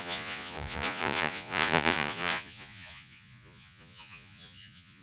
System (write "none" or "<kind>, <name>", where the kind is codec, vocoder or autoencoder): vocoder, Vocos